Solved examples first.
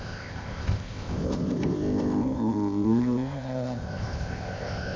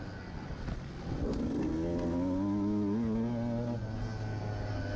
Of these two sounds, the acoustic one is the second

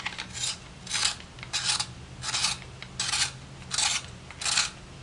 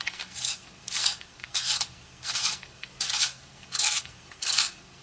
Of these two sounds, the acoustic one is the first